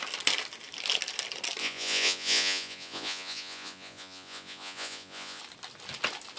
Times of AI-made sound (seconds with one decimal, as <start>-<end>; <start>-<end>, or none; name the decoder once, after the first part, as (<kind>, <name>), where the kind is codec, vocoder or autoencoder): 1.6-5.4 (vocoder, Vocos)